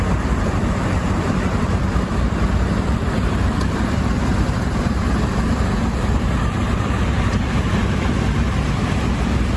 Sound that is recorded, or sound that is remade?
remade